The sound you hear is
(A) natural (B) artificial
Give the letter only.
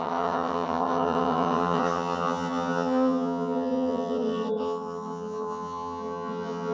B